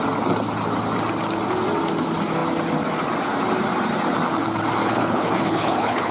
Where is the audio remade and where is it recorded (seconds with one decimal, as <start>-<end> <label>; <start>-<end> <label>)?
0.0-4.8 recorded; 4.8-6.1 remade